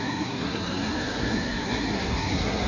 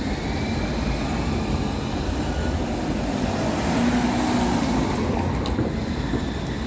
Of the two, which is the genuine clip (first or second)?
second